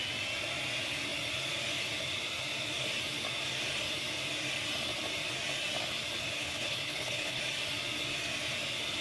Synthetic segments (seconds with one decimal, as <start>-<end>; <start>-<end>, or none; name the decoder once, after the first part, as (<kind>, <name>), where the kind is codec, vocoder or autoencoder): 6.4-7.4 (codec, HILCodec)